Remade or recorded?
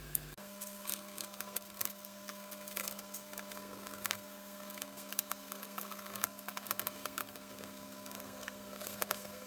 remade